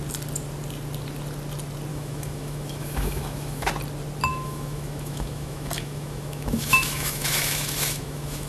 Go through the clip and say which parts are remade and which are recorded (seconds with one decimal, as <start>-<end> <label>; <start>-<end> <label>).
0.0-1.9 recorded; 1.9-3.7 remade; 3.7-4.3 recorded; 4.3-8.5 remade